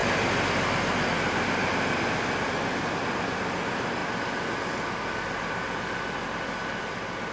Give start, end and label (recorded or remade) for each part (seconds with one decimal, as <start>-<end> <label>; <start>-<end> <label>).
0.0-7.3 recorded